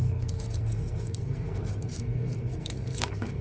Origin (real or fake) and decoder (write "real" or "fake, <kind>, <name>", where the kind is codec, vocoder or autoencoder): fake, codec, SNAC